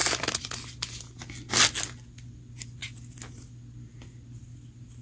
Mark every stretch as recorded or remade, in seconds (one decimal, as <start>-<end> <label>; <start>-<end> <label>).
0.0-5.0 recorded